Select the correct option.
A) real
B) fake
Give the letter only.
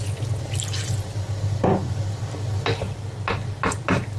A